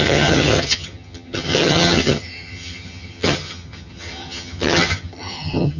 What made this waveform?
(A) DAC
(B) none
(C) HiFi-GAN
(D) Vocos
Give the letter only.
C